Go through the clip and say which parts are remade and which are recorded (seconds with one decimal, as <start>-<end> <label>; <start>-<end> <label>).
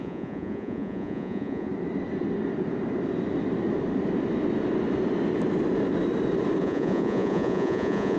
0.0-1.7 remade; 1.7-6.6 recorded; 6.6-8.2 remade